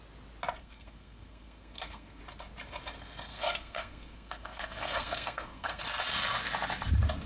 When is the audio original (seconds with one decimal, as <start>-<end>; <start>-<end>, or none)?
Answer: 0.0-0.6; 2.2-3.3; 5.8-7.3